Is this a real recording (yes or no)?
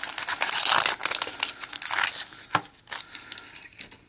yes